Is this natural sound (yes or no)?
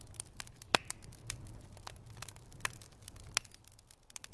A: yes